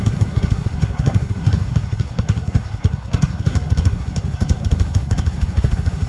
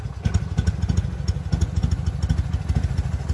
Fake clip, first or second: first